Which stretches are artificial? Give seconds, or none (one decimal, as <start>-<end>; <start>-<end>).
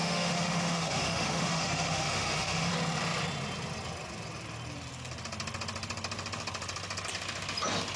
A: 0.0-2.7